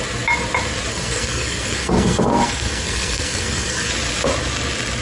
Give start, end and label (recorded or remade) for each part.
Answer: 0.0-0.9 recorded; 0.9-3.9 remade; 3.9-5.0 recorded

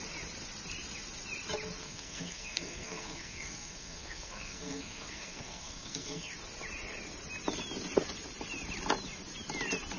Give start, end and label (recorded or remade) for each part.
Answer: 0.0-1.8 recorded; 1.8-6.3 remade; 6.3-10.0 recorded

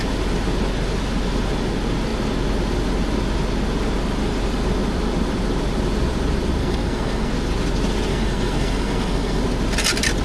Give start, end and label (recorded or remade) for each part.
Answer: 0.0-6.6 recorded; 6.6-7.3 remade; 7.3-8.1 recorded; 8.1-9.4 remade; 9.4-10.2 recorded

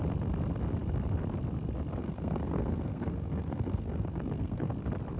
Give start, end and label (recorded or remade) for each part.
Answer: 0.0-2.0 recorded; 2.0-4.7 remade; 4.7-5.2 recorded

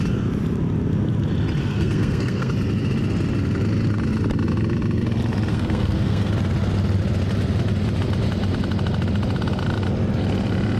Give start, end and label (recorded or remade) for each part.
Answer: 0.0-1.6 recorded; 1.6-2.5 remade; 2.5-5.5 recorded; 5.5-6.3 remade; 6.3-10.8 recorded

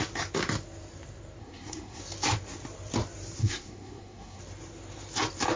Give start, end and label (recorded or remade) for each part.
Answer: 0.0-1.4 recorded; 1.4-2.0 remade; 2.0-3.4 recorded; 3.4-4.4 remade; 4.4-5.6 recorded